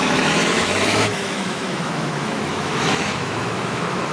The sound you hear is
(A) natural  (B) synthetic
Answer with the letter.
B